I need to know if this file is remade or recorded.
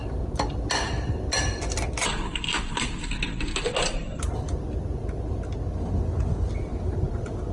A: recorded